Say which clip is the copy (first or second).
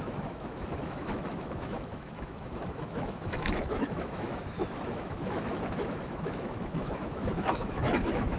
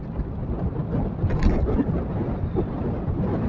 first